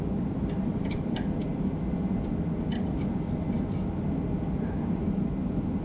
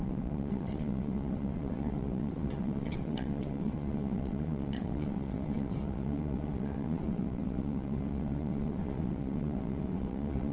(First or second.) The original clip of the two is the first